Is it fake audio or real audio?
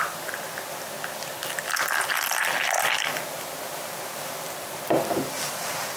real